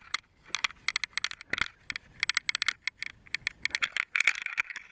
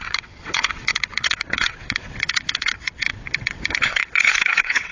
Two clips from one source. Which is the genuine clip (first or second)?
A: first